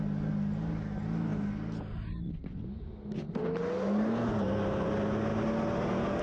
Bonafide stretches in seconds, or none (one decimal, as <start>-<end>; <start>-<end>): 0.0-6.2